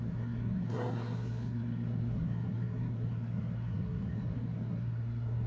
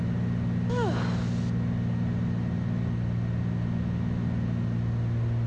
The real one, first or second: second